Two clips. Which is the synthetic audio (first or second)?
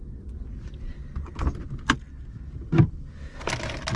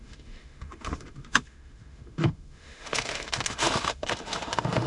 second